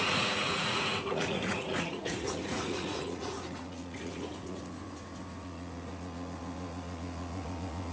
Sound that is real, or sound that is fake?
fake